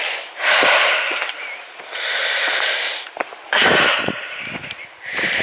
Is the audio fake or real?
real